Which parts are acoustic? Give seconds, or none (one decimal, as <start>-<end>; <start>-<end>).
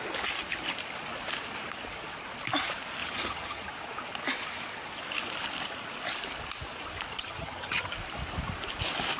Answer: 0.0-3.0; 3.7-7.1; 7.9-9.2